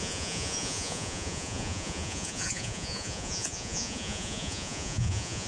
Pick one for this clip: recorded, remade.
remade